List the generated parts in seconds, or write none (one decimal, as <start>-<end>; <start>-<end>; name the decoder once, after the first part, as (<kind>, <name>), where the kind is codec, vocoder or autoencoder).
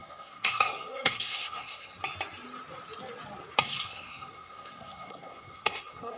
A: 0.0-2.0 (codec, SNAC); 3.6-6.2